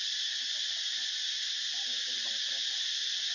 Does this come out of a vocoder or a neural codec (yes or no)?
no